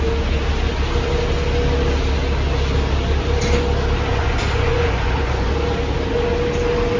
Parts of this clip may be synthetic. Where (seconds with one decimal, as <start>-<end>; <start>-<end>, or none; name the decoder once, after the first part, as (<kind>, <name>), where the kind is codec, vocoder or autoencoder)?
4.1-5.5 (vocoder, Vocos)

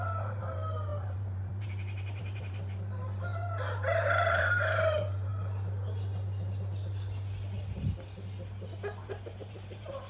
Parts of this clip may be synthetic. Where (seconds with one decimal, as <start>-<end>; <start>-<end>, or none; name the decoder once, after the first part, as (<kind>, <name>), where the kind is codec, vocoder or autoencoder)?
0.0-5.3 (vocoder, BigVGAN v2); 9.1-10.1

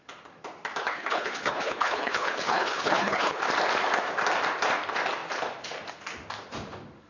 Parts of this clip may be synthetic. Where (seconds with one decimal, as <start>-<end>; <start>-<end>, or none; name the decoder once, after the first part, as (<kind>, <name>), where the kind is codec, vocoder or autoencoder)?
0.8-3.4 (codec, HILCodec)